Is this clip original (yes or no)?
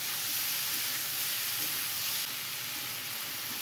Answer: yes